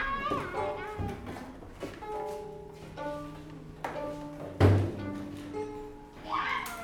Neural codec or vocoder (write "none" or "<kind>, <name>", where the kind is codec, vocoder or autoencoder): none